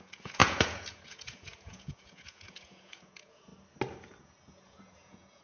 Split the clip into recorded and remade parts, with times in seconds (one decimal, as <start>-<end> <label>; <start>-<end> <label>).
0.0-3.5 remade; 3.5-4.2 recorded; 4.2-5.4 remade